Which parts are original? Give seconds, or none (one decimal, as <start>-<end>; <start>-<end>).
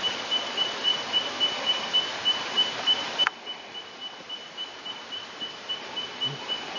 0.0-6.8